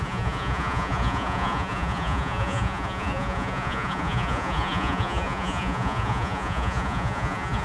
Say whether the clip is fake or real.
fake